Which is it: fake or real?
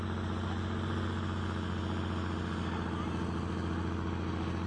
real